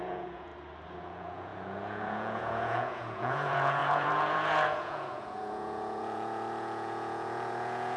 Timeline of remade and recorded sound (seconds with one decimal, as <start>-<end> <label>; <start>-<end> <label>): 0.0-0.5 remade; 0.5-1.0 recorded; 1.0-8.0 remade